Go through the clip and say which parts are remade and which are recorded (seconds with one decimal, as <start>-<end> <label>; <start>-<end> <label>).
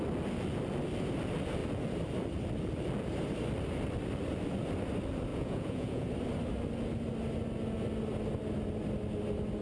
0.0-5.3 recorded; 5.3-6.1 remade; 6.1-9.6 recorded